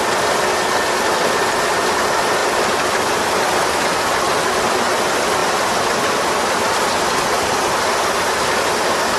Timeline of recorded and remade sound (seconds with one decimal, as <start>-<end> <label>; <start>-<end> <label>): 0.0-9.2 recorded